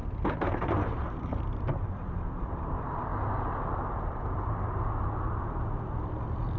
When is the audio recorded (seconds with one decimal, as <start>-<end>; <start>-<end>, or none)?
0.0-0.6; 3.1-3.7